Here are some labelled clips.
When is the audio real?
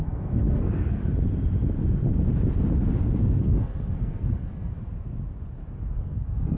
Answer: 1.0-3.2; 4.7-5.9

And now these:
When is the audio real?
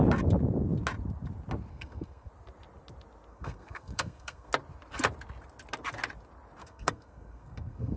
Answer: 0.0-1.7; 2.3-3.3; 4.5-6.6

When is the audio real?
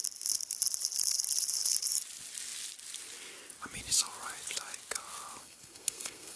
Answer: 0.0-5.4